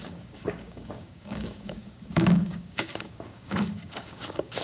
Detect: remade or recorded remade